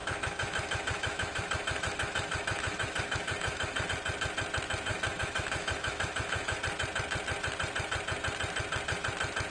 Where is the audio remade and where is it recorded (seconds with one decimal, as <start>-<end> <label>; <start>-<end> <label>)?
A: 0.0-3.9 remade; 3.9-4.9 recorded; 4.9-6.6 remade; 6.6-9.5 recorded